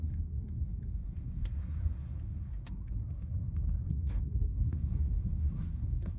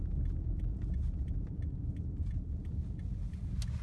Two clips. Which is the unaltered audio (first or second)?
second